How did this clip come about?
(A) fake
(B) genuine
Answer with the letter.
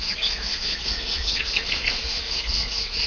A